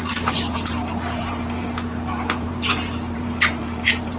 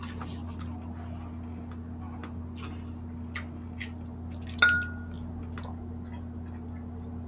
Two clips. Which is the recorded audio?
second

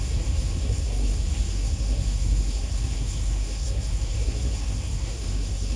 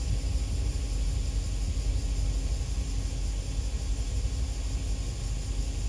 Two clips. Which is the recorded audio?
second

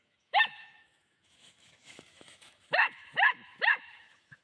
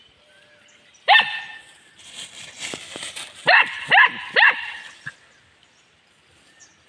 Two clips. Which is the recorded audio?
second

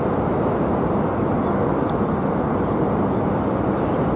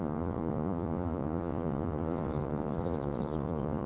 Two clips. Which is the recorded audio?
first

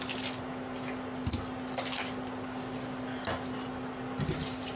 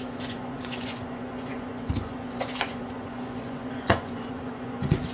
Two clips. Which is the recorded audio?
first